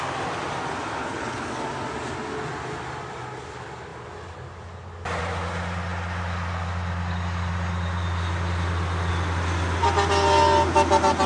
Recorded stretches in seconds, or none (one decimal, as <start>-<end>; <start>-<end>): 0.0-1.0; 1.5-11.3